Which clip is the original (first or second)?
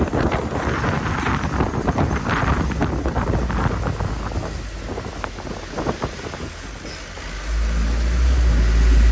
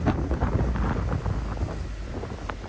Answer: first